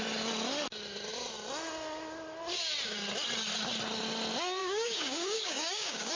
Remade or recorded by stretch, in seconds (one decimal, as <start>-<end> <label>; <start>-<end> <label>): 0.0-4.6 recorded; 4.6-6.1 remade